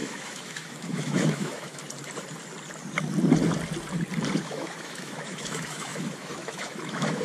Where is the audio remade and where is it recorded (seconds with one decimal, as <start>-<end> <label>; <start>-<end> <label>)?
0.0-1.8 remade; 1.8-4.4 recorded; 4.4-7.2 remade